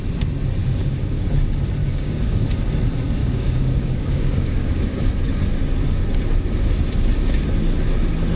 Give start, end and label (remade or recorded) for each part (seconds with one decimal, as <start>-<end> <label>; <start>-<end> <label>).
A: 0.0-0.6 recorded; 0.6-1.3 remade; 1.3-1.8 recorded; 1.8-2.5 remade; 2.5-3.2 recorded; 3.2-5.1 remade; 5.1-8.4 recorded